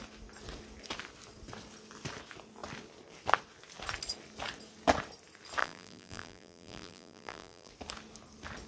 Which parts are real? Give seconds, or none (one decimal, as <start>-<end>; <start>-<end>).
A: 0.0-5.6; 7.7-8.7